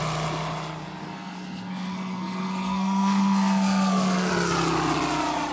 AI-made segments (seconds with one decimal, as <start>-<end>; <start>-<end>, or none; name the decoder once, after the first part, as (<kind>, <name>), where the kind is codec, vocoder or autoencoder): 1.0-4.3 (codec, SNAC)